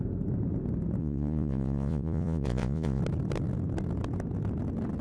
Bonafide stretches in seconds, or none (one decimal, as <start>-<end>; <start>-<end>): 0.0-1.0; 3.0-5.0